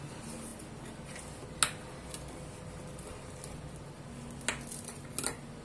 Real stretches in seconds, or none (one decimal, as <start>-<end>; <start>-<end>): 0.0-5.6